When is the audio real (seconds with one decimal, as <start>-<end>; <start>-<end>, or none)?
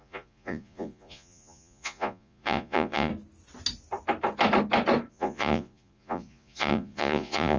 3.1-5.1